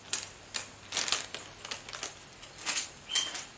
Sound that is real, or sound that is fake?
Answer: real